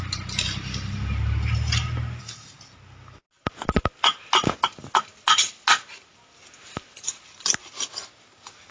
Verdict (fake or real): real